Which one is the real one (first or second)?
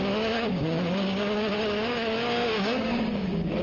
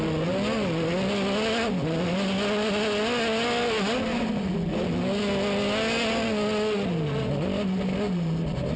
second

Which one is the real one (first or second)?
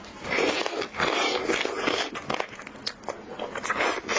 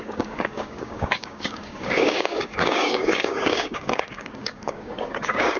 first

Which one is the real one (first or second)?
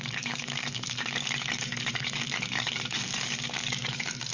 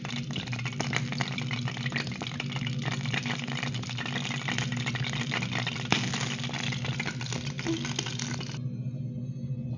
second